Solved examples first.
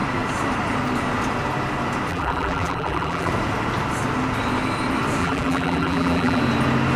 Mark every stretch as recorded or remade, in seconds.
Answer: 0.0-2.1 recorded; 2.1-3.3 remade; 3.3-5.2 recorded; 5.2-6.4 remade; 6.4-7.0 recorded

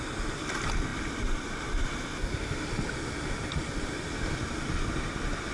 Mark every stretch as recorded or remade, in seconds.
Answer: 0.0-0.9 recorded; 0.9-4.2 remade; 4.2-5.5 recorded

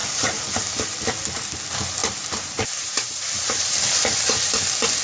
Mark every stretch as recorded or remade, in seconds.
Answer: 0.0-1.0 remade; 1.0-2.0 recorded; 2.0-5.0 remade

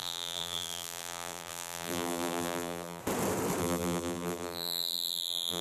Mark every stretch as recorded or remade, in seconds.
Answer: 0.0-3.0 remade; 3.0-3.6 recorded; 3.6-5.6 remade

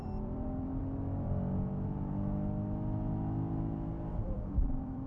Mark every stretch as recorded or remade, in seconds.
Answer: 0.0-0.8 remade; 0.8-4.1 recorded; 4.1-5.1 remade

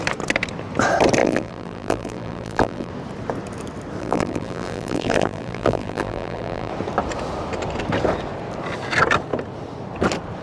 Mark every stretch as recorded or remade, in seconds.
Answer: 0.0-1.2 recorded; 1.2-2.9 remade; 2.9-4.0 recorded; 4.0-6.7 remade; 6.7-10.4 recorded

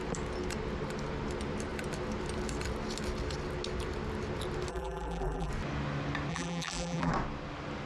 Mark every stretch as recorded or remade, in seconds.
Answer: 0.0-4.7 recorded; 4.7-5.5 remade; 5.5-6.3 recorded; 6.3-7.1 remade; 7.1-7.9 recorded